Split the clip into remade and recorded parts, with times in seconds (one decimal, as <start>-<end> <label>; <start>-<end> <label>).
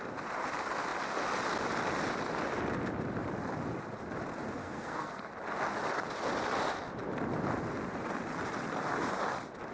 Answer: 0.0-4.6 recorded; 4.6-5.3 remade; 5.3-9.7 recorded